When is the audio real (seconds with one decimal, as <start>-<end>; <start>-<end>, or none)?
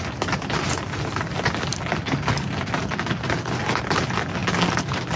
0.0-5.2